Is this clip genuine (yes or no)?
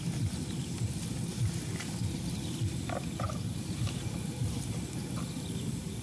yes